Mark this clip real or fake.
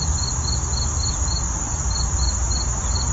real